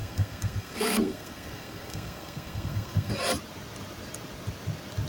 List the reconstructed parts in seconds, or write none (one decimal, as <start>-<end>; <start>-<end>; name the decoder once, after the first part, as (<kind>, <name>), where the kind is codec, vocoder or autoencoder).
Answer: 0.0-3.1 (codec, SNAC)